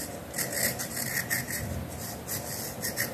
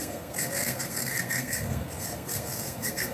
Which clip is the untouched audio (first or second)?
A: first